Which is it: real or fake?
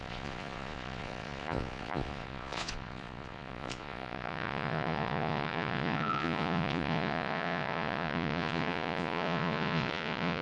fake